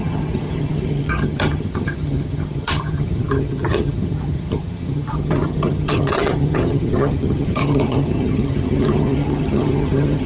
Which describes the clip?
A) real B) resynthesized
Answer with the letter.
B